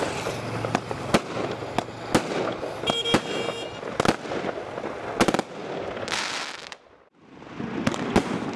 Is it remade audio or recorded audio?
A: recorded